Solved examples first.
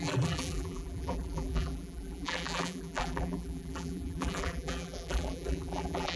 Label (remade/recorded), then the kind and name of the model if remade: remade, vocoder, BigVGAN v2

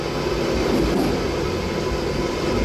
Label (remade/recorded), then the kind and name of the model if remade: recorded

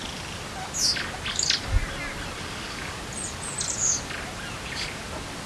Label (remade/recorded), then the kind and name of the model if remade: recorded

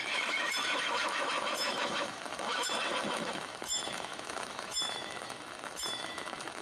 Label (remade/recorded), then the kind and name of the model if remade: remade, autoencoder, DAC-VAE